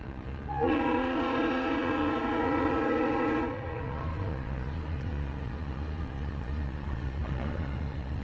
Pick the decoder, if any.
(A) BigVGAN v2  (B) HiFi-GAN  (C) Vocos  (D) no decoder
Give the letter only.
C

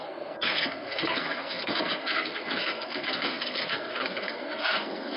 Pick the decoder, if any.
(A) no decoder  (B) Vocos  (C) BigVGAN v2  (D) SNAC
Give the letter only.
D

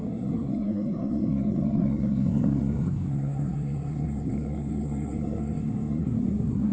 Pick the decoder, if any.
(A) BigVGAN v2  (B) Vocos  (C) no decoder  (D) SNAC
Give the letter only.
D